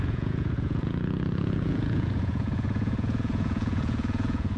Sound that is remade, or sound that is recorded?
remade